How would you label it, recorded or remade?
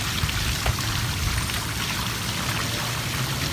recorded